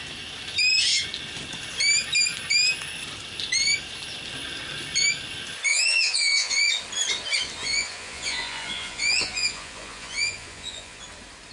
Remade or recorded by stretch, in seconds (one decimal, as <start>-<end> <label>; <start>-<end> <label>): 0.0-5.7 recorded; 5.7-6.7 remade; 6.7-7.6 recorded; 7.6-11.0 remade; 11.0-11.5 recorded